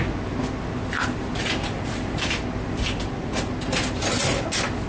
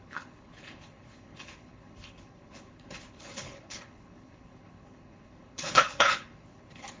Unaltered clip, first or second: first